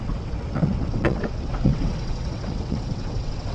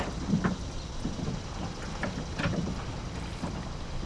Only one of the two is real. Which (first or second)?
second